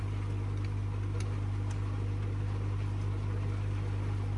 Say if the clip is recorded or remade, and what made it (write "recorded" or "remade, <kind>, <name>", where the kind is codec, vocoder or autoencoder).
recorded